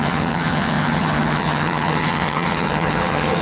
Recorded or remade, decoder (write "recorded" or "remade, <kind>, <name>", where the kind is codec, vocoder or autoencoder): remade, vocoder, HiFi-GAN